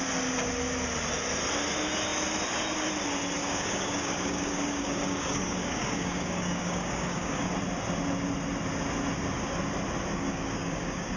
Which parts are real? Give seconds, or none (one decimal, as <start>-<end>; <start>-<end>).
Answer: 0.0-3.4; 7.5-10.1